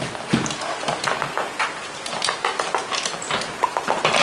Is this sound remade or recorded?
recorded